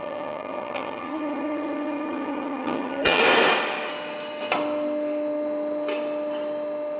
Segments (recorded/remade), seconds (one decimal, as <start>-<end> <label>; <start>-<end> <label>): 0.0-3.2 remade; 3.2-7.0 recorded